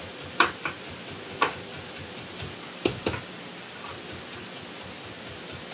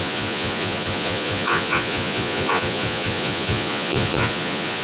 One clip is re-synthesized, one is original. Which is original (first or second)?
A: first